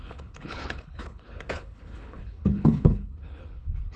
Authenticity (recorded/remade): remade